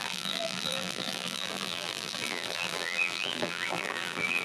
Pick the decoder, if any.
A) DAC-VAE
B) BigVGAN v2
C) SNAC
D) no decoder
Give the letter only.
B